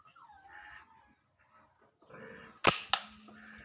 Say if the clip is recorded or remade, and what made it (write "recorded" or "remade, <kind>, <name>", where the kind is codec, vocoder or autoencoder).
recorded